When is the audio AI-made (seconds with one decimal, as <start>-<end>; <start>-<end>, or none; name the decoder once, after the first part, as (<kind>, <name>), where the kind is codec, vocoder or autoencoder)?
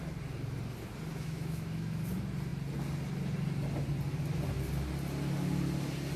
1.1-2.0 (autoencoder, DAC-VAE)